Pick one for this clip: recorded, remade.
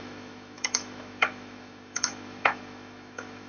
remade